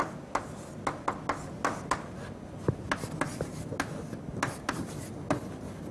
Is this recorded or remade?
recorded